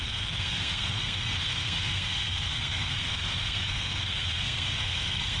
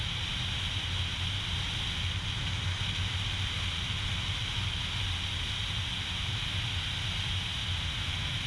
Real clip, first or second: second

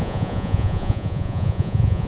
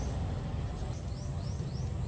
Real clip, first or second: second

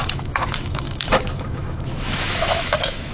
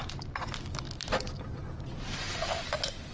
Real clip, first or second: second